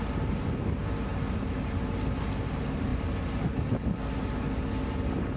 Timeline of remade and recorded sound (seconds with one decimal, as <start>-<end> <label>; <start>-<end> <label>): 0.0-5.4 recorded